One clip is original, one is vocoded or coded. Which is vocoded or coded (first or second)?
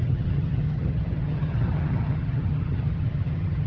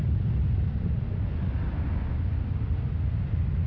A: first